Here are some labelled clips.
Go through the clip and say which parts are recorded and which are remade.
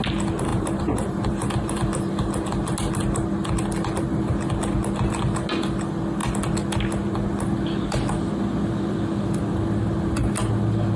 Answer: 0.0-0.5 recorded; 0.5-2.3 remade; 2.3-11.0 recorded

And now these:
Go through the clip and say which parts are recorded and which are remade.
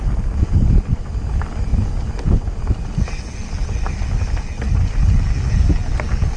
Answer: 0.0-6.4 recorded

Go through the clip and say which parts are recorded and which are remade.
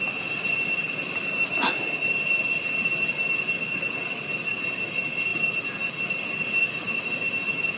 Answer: 0.0-7.8 recorded